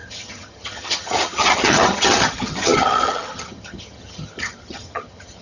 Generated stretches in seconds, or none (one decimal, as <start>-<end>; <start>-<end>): 0.0-5.4